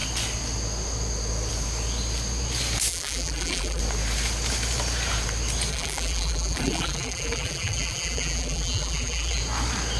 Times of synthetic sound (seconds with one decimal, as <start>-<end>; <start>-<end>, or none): 2.9-3.8; 5.7-9.4